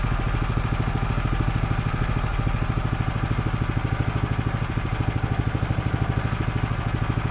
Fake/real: real